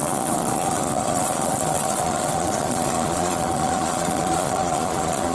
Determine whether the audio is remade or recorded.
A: remade